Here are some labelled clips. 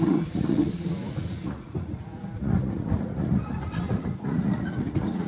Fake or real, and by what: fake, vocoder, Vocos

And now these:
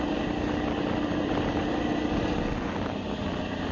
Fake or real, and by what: fake, vocoder, BigVGAN v2